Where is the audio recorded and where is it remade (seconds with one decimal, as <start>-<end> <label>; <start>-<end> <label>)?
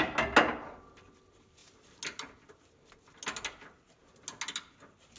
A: 0.0-5.2 recorded